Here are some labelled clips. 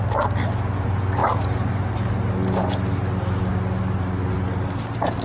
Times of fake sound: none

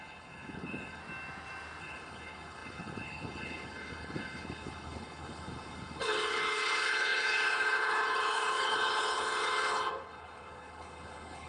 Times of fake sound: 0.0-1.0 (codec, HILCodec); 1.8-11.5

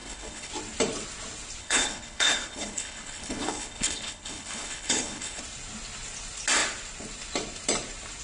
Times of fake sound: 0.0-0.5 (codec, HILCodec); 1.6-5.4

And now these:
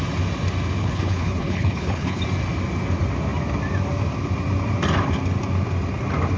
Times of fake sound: 0.8-2.2 (codec, HILCodec)